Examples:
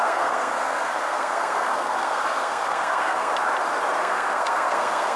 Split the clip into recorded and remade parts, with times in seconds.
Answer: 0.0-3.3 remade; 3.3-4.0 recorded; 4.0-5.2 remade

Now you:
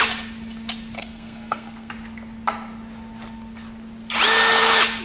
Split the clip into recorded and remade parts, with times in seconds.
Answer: 0.0-1.0 recorded; 1.0-1.9 remade; 1.9-5.0 recorded

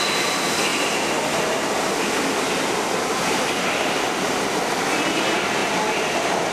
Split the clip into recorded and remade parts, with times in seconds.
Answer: 0.0-6.5 recorded

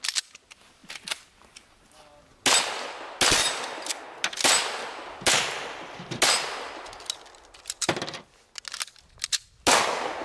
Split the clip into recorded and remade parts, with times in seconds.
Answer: 0.0-10.2 recorded

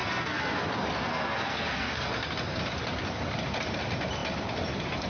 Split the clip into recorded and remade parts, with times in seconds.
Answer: 0.0-0.6 remade; 0.6-1.0 recorded; 1.0-2.1 remade; 2.1-5.1 recorded

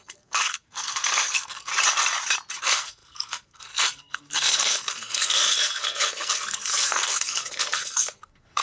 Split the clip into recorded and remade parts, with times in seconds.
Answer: 0.0-1.7 remade; 1.7-2.6 recorded; 2.6-8.6 remade